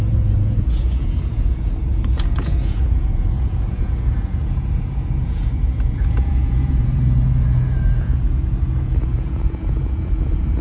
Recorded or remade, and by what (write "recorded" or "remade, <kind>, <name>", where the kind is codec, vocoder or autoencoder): remade, vocoder, Vocos